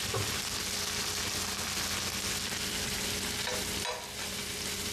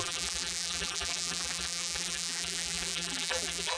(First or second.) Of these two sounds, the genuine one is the first